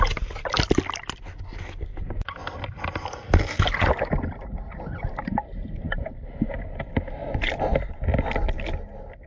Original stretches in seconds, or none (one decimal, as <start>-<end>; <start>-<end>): 0.0-9.3